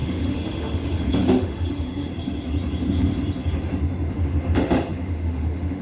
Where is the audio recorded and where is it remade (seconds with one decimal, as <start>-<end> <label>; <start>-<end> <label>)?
0.0-2.1 remade; 2.1-4.1 recorded; 4.1-5.8 remade